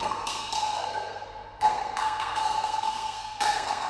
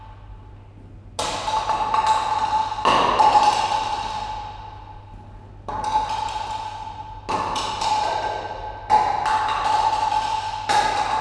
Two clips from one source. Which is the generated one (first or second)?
first